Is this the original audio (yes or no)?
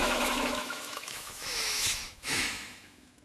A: no